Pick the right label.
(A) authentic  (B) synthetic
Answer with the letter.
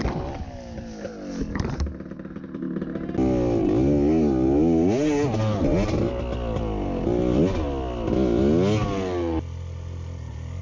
A